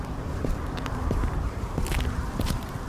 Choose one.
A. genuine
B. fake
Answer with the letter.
A